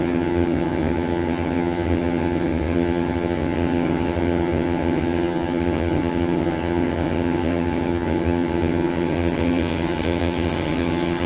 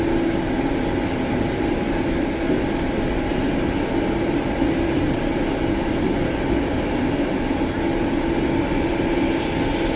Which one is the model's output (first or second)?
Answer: first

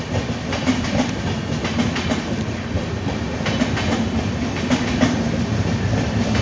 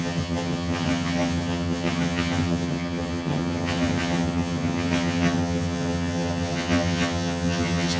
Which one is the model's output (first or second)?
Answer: second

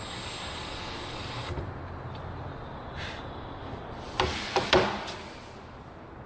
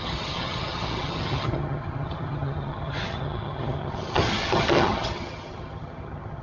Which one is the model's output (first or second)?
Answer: second